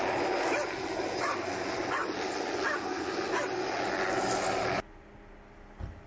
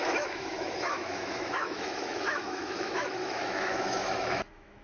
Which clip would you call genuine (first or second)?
first